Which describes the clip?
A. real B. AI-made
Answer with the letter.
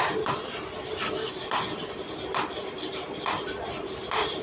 A